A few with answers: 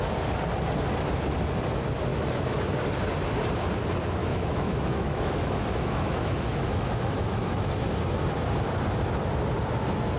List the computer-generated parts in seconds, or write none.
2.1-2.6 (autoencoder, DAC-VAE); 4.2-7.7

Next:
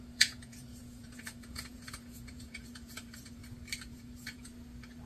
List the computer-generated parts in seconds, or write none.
0.0-3.4 (vocoder, Vocos); 3.9-4.5

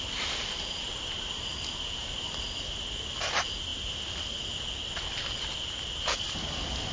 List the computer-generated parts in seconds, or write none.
1.5-2.1 (vocoder, BigVGAN v2)

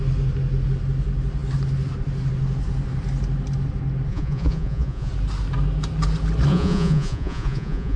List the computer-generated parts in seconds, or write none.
4.1-5.1 (vocoder, Vocos); 6.5-8.0

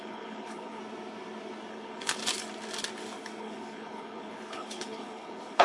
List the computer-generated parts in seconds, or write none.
0.0-0.8 (codec, HILCodec); 1.7-2.2; 3.4-5.6